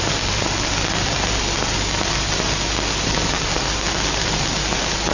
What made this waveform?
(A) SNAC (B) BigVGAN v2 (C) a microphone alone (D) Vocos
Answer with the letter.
C